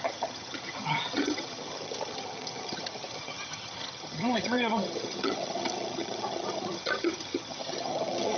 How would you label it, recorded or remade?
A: remade